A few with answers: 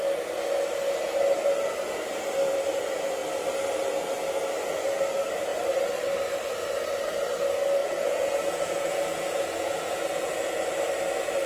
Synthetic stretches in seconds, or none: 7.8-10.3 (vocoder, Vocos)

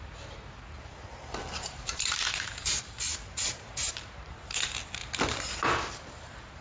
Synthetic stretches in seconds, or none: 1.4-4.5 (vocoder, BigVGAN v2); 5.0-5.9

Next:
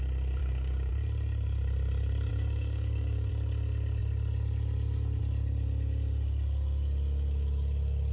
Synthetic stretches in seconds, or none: 0.4-0.9 (codec, DAC); 2.3-3.3